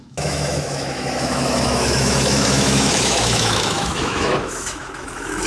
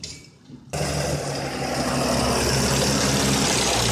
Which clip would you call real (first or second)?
second